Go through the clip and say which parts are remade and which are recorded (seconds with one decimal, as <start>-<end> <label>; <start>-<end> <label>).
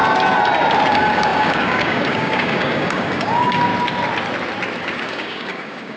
0.0-0.9 recorded; 0.9-3.7 remade; 3.7-4.8 recorded; 4.8-6.0 remade